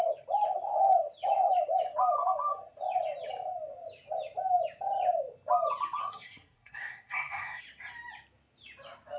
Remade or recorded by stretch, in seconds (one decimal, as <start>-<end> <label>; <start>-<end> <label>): 0.0-6.0 recorded; 6.0-7.6 remade; 7.6-9.2 recorded